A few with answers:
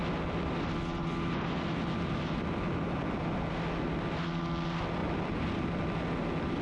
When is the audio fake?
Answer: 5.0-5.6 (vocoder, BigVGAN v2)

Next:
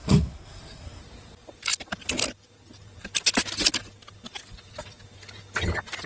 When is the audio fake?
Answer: 0.0-1.0 (codec, SNAC)

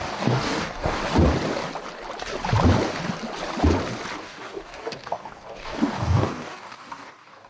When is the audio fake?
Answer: 0.0-1.0 (codec, DAC); 4.2-7.5

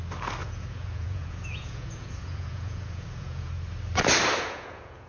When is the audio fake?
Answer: 0.4-3.5 (vocoder, Vocos); 4.3-5.1

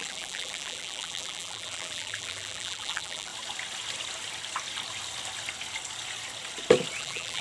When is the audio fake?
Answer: 0.0-3.3 (vocoder, BigVGAN v2); 7.0-7.4

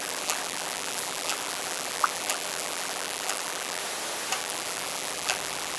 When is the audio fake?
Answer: 0.0-3.8 (vocoder, BigVGAN v2); 4.4-5.8

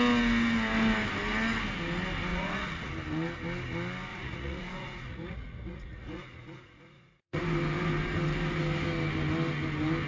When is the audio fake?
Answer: 2.3-2.9 (vocoder, Vocos); 4.1-7.4

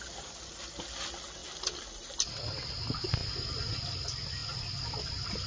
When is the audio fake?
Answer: none